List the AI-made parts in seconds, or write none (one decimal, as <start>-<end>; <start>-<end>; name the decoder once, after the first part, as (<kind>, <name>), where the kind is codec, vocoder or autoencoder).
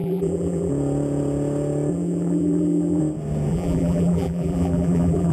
0.0-0.7 (vocoder, BigVGAN v2); 1.9-3.0; 3.5-5.3